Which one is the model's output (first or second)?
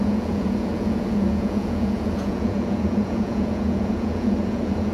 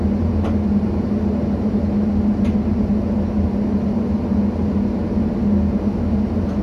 first